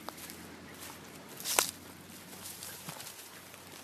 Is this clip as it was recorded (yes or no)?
yes